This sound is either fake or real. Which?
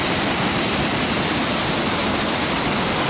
real